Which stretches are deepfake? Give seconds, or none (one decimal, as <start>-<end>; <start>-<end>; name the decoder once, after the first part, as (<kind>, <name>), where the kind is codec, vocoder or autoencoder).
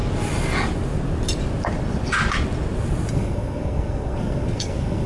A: 3.1-5.1 (codec, SNAC)